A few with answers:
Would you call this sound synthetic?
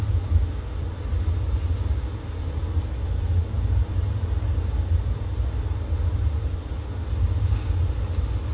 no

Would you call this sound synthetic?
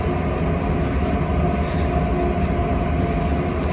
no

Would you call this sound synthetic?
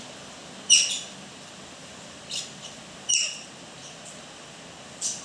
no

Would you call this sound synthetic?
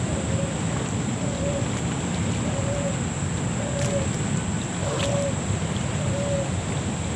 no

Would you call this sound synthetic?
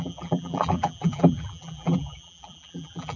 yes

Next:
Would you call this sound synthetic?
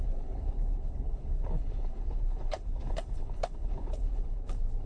yes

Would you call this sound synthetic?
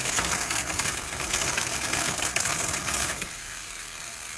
yes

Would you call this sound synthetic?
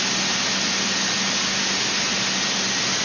no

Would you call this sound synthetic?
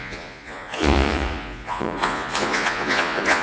yes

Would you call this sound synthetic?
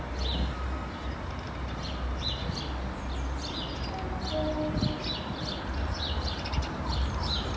no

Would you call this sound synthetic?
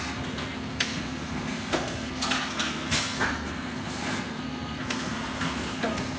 yes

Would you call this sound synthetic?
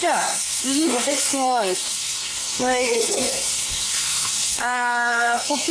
yes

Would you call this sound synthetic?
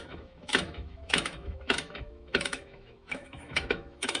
yes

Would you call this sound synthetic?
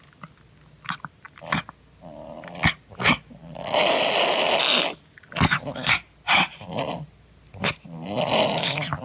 no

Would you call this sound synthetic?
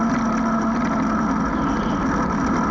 no